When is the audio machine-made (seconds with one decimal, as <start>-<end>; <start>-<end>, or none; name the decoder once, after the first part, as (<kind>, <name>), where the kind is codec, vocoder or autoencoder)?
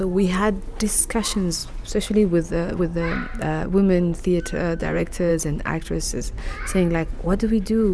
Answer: 4.8-5.3 (vocoder, Vocos)